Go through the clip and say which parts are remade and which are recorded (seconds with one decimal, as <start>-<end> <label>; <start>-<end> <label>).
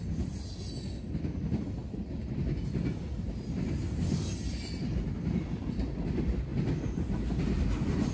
0.0-8.1 recorded